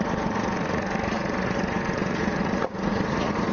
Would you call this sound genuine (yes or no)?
no